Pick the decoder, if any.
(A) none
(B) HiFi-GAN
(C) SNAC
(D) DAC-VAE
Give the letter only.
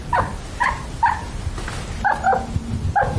A